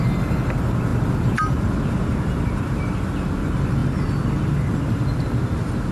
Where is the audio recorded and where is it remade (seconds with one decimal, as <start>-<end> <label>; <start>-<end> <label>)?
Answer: 0.0-5.9 recorded